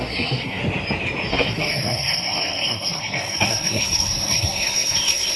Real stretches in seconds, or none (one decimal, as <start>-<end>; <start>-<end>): 0.6-1.3